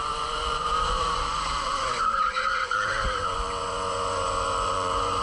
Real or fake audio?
fake